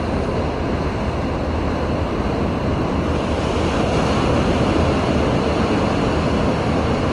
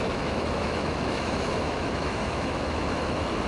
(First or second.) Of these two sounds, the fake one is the second